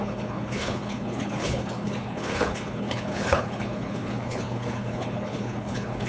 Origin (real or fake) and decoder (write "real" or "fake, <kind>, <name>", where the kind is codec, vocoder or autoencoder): fake, codec, HILCodec